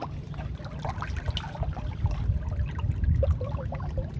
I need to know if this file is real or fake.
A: real